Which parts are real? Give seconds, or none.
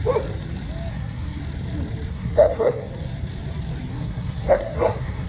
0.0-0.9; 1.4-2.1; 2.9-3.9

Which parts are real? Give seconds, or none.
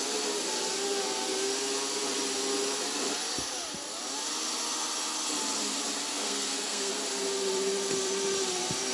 0.0-6.1; 6.9-8.9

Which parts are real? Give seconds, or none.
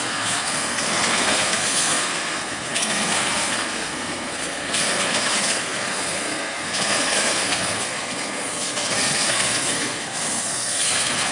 none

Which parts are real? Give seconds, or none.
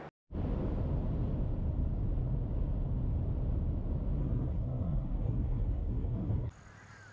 0.0-4.2; 6.5-7.1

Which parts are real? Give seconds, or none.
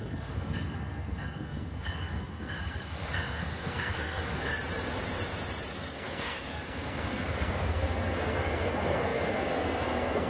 4.5-5.7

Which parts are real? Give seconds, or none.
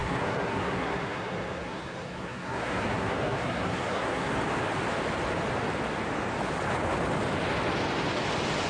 4.3-8.7